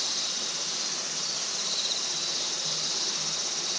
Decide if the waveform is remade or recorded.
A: recorded